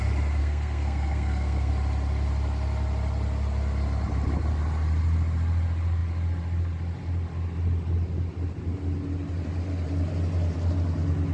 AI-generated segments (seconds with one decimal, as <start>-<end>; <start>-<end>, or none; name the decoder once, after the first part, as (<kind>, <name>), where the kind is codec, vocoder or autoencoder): 0.4-1.7 (codec, SNAC)